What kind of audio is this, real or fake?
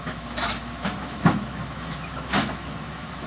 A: fake